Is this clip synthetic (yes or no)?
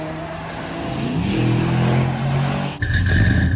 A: no